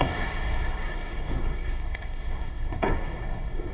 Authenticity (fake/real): fake